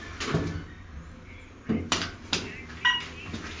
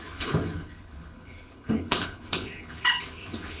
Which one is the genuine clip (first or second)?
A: first